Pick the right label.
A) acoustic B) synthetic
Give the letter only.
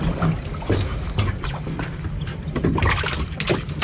A